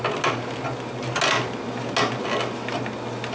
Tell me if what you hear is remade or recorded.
recorded